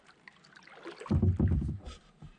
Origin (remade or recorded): recorded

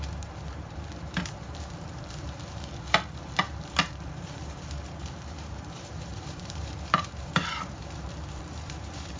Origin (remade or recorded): remade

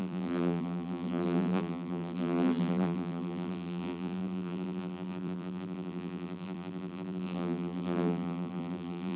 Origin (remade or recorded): remade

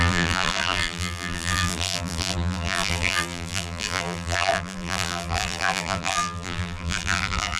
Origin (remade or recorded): remade